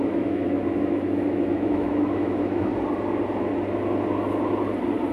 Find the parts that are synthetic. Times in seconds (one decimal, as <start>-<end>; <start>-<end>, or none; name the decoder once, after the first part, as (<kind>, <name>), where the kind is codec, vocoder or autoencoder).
0.0-2.7 (autoencoder, DAC-VAE)